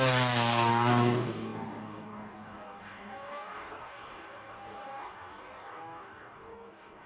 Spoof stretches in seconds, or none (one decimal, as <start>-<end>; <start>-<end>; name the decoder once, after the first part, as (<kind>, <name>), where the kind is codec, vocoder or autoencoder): 0.0-7.1 (codec, DAC)